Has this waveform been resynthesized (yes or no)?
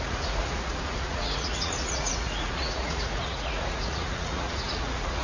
yes